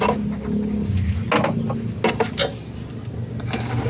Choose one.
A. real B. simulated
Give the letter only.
A